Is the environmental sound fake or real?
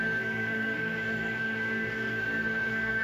fake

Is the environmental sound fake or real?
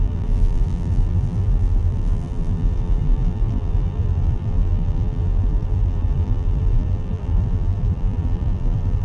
fake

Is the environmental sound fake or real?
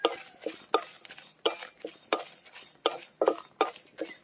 real